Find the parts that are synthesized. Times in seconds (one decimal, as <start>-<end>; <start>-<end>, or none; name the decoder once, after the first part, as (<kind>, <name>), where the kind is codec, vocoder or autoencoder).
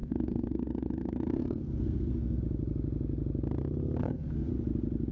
0.0-2.4 (codec, SNAC); 4.0-4.5